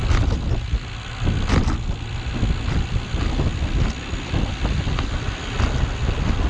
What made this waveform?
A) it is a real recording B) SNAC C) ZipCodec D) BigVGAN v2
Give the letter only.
A